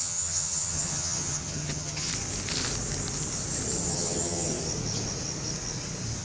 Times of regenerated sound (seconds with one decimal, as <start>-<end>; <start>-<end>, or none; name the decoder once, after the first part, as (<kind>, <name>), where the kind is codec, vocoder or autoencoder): 0.0-2.1 (vocoder, HiFi-GAN); 3.9-4.5

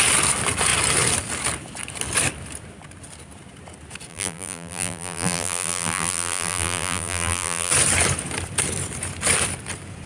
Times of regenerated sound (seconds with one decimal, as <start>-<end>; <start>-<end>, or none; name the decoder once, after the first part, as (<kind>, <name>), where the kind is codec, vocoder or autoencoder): 4.1-7.7 (vocoder, BigVGAN v2)